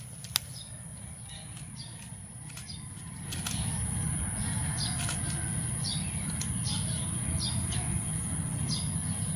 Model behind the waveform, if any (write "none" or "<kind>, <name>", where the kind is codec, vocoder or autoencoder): none